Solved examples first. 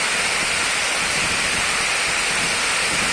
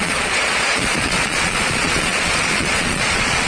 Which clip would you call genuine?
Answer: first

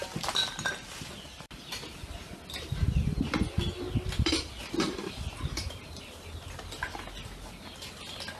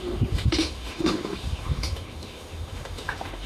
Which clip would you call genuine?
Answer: first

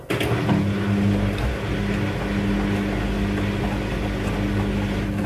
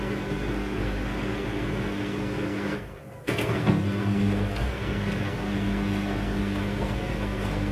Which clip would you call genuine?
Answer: first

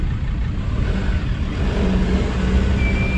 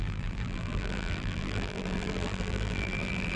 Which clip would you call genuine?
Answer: first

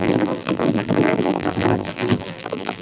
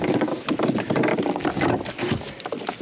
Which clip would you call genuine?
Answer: second